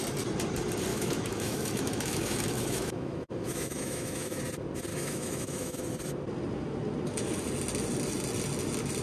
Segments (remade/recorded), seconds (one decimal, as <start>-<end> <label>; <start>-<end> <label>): 0.0-0.9 recorded; 0.9-4.4 remade; 4.4-4.9 recorded; 4.9-5.8 remade; 5.8-9.0 recorded